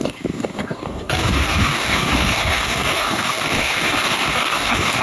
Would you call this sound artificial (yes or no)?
yes